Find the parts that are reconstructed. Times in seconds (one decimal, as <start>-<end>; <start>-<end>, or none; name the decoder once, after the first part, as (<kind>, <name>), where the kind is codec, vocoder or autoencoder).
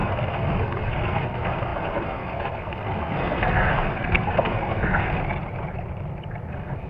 0.0-5.2 (codec, SNAC); 6.5-6.9